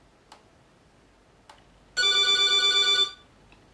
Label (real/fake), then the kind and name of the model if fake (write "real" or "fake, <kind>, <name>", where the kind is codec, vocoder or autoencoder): real